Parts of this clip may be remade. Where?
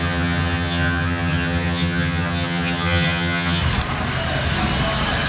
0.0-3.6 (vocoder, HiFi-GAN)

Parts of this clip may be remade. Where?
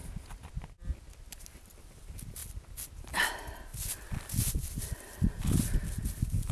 none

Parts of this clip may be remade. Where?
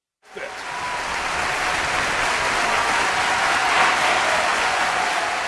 4.5-5.1 (vocoder, Vocos)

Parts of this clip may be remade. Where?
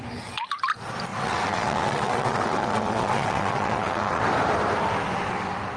1.1-4.2 (vocoder, WaveNeXt)